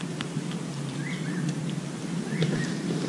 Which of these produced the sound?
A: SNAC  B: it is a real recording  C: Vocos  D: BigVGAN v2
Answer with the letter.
D